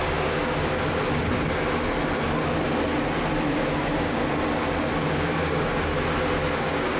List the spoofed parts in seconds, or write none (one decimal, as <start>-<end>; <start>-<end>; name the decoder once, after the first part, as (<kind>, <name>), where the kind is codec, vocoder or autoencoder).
0.0-0.4 (codec, DAC); 3.5-4.2; 5.0-5.9; 6.6-7.0